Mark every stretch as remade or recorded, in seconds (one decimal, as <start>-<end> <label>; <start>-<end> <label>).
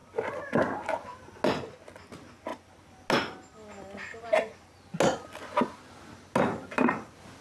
0.0-7.4 recorded